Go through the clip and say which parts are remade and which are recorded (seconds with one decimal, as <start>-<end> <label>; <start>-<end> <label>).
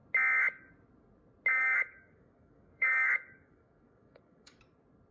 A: 0.0-1.5 recorded; 1.5-4.6 remade; 4.6-5.1 recorded